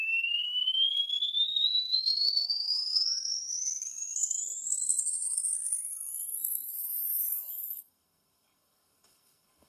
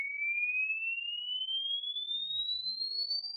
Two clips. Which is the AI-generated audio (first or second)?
first